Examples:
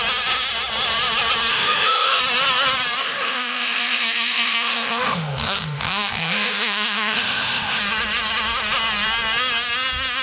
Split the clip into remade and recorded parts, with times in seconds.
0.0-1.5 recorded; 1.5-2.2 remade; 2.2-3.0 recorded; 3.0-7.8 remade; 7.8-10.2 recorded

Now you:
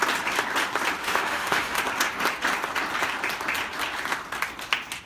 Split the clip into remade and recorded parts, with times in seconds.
0.0-1.0 recorded; 1.0-1.8 remade; 1.8-5.1 recorded

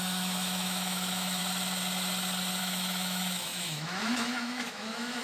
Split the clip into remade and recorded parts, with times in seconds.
0.0-1.4 remade; 1.4-2.6 recorded; 2.6-5.2 remade